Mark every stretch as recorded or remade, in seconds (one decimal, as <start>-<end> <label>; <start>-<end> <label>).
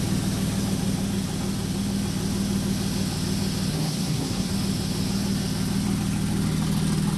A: 0.0-3.7 recorded; 3.7-4.5 remade; 4.5-7.2 recorded